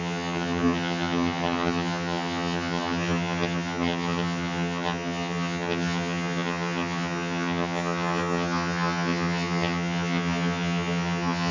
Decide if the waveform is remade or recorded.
remade